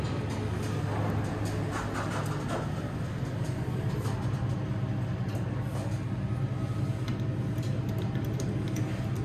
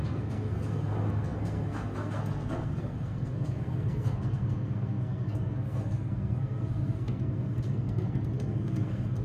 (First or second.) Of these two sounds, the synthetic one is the second